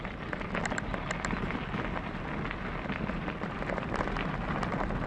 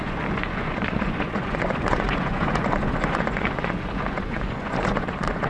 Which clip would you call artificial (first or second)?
second